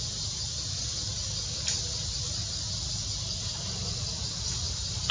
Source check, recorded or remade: recorded